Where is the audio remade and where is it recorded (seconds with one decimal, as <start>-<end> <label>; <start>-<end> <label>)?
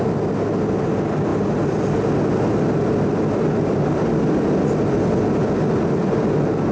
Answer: 0.0-6.7 recorded